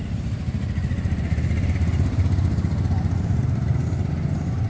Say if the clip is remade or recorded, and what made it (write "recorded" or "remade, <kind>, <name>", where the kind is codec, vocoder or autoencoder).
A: recorded